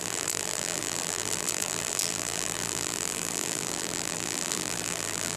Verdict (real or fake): fake